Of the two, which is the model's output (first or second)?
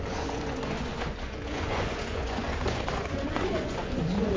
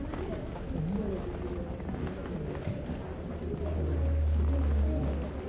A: first